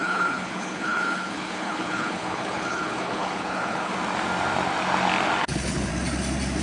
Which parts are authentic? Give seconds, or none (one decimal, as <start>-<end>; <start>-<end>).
3.9-5.4; 5.9-6.6